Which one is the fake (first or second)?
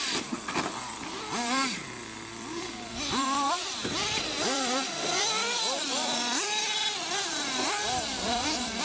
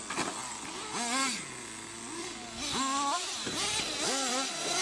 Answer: first